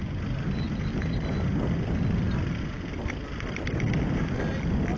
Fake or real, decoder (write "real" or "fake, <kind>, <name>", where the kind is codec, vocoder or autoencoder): real